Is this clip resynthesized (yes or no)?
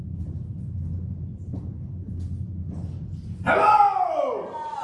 no